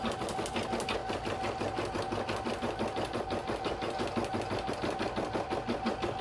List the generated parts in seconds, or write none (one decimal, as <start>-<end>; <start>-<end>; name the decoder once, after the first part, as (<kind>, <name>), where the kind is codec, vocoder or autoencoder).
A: none